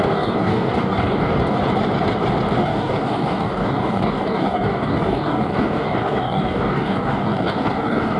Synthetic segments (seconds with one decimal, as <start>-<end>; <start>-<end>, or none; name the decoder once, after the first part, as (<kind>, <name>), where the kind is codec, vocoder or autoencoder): 0.0-1.6 (codec, DAC); 2.6-8.2